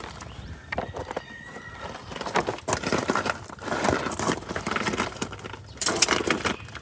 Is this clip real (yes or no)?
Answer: yes